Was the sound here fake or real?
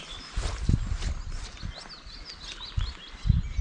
real